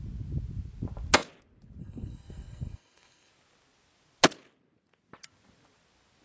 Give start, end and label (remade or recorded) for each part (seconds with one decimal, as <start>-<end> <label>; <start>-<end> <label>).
0.0-1.8 recorded; 1.8-3.3 remade; 3.3-6.2 recorded